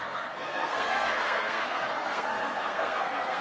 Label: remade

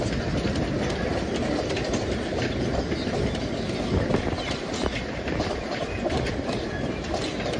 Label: recorded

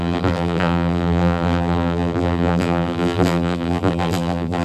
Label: remade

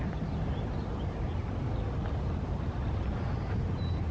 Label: recorded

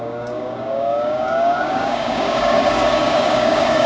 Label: remade